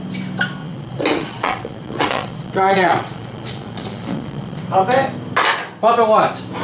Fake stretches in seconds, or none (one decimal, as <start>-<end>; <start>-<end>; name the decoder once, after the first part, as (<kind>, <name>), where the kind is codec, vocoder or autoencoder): 0.6-4.6 (vocoder, Vocos)